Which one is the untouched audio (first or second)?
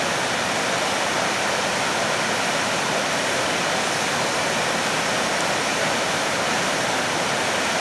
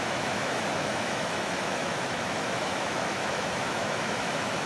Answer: first